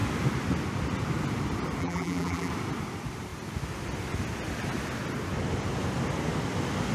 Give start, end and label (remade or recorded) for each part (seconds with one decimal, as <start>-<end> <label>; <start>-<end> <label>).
0.0-1.8 recorded; 1.8-2.5 remade; 2.5-6.9 recorded